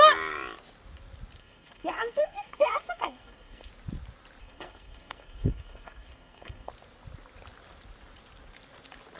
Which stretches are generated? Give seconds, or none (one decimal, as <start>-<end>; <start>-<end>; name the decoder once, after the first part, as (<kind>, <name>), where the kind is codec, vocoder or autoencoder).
1.4-3.7 (codec, SNAC); 4.4-6.7